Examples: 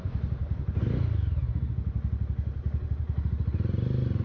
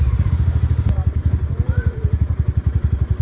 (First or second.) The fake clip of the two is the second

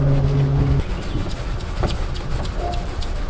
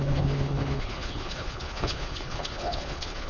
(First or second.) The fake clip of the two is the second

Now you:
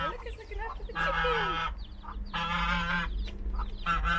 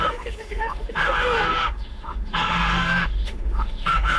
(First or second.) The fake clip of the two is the second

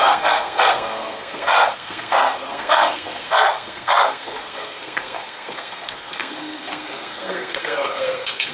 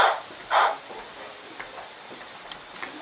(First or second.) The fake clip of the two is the first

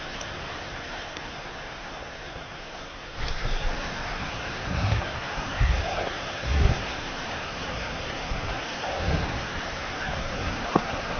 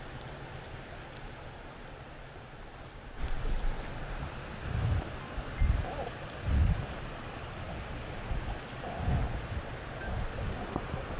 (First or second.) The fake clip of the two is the first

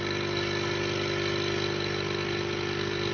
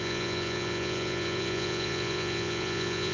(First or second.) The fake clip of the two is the second